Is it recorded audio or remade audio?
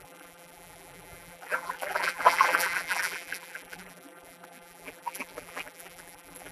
remade